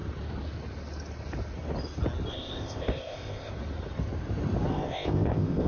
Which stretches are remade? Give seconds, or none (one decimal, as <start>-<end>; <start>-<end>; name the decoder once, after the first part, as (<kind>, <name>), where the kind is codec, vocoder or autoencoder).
2.3-3.5 (codec, ZipCodec); 4.7-5.7